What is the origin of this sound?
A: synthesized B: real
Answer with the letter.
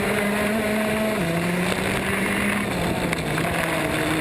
B